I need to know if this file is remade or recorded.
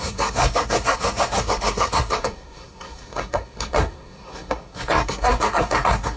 remade